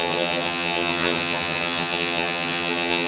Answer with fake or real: fake